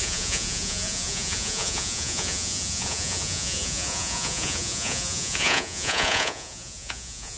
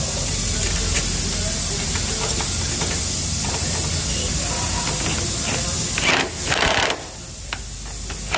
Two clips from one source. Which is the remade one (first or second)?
first